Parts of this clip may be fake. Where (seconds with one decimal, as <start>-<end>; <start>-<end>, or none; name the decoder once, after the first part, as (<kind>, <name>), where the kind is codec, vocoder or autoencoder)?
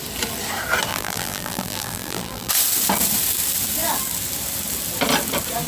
0.9-2.5 (vocoder, BigVGAN v2)